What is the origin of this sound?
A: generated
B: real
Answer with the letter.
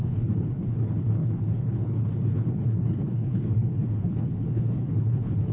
A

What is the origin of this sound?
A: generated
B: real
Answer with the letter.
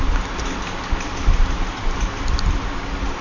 B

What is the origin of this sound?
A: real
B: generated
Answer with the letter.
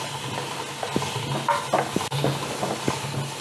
A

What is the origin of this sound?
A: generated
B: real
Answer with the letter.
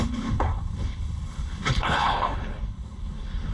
A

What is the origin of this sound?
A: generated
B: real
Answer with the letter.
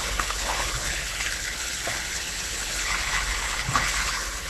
A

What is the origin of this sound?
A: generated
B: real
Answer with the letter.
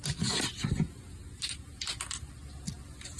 B